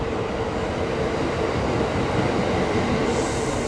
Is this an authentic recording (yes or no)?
yes